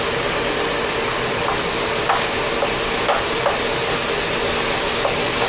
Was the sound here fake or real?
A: real